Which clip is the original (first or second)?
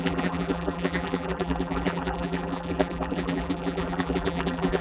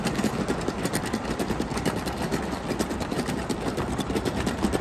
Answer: second